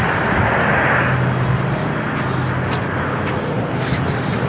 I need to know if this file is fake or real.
real